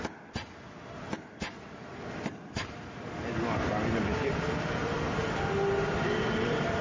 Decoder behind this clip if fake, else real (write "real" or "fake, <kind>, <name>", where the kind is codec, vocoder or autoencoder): real